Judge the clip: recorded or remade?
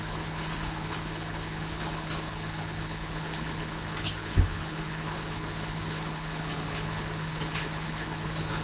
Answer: remade